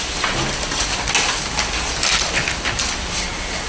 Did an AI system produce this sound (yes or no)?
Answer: no